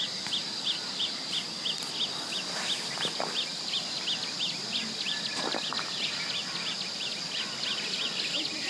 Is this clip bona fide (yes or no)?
yes